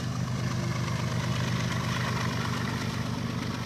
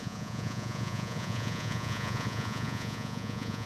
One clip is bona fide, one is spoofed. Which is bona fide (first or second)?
first